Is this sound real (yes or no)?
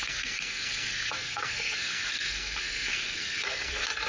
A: no